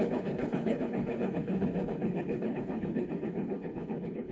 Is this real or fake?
fake